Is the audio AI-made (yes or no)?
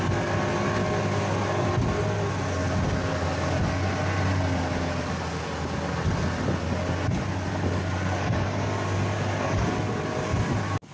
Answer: no